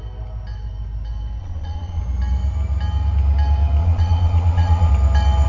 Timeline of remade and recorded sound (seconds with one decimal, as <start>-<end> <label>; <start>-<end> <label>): 0.0-1.4 recorded; 1.4-2.0 remade; 2.0-3.8 recorded; 3.8-4.9 remade; 4.9-5.5 recorded